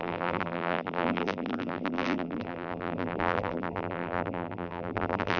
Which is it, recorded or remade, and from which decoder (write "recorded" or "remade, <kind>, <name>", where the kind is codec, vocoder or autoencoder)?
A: remade, vocoder, BigVGAN v2